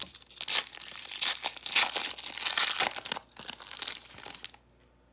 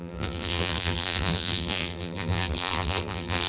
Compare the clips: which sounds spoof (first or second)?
second